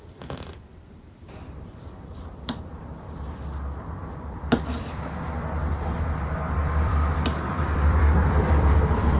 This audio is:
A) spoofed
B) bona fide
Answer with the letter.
A